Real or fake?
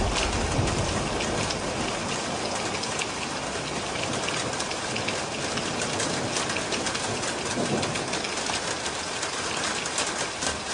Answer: real